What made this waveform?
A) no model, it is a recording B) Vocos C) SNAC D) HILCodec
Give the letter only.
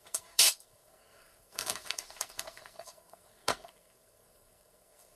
C